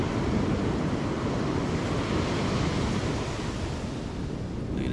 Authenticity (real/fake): real